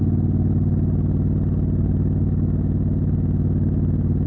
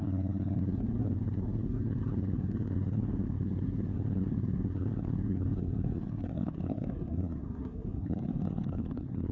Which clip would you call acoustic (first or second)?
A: first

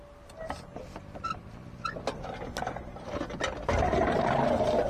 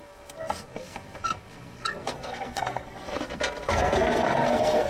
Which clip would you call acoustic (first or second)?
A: first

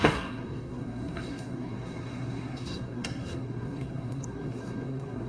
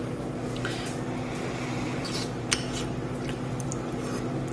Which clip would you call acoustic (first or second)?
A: second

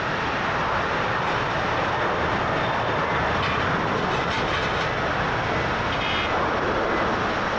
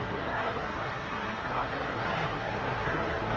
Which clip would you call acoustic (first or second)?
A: first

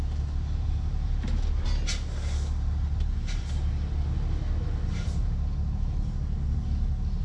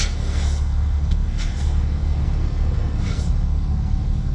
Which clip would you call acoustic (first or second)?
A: first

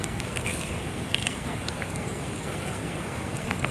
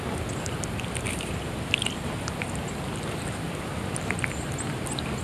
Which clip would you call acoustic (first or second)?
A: second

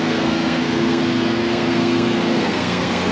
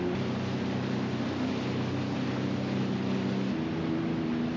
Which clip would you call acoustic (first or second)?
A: second